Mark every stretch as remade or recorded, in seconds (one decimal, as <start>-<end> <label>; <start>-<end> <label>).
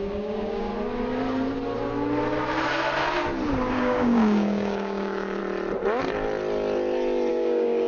0.0-0.7 remade; 0.7-3.7 recorded; 3.7-5.4 remade; 5.4-7.3 recorded; 7.3-7.9 remade